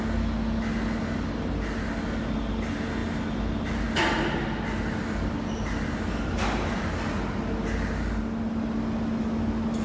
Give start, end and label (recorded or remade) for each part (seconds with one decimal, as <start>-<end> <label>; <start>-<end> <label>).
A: 0.0-9.8 recorded